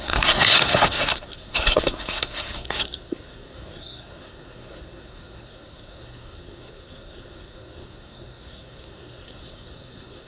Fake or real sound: fake